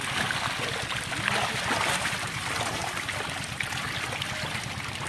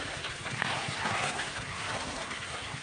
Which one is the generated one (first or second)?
second